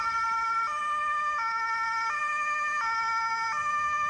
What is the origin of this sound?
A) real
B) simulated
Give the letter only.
A